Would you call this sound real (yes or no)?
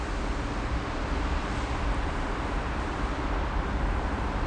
yes